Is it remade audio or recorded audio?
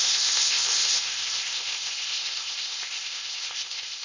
remade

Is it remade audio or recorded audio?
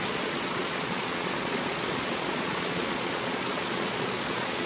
remade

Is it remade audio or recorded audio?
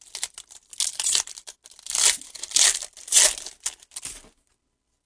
recorded